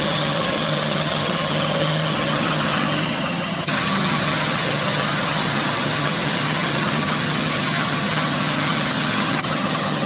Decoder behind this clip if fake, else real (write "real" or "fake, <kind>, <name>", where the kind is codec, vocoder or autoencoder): fake, vocoder, HiFi-GAN